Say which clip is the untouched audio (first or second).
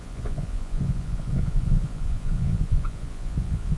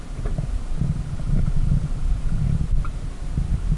second